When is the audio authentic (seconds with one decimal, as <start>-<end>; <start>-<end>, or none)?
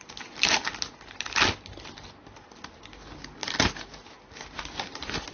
0.0-5.3